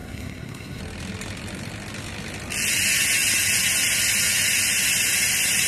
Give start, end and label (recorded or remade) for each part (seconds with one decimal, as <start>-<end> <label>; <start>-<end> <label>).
0.0-0.8 remade; 0.8-5.7 recorded